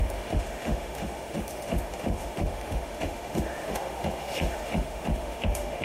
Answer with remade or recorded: remade